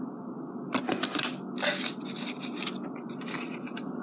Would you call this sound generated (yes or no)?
no